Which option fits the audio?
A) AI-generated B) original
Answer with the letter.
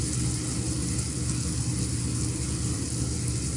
B